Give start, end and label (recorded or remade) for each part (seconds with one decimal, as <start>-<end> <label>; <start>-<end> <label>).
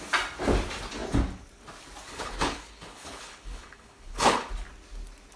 0.0-2.1 recorded; 2.1-4.5 remade; 4.5-5.4 recorded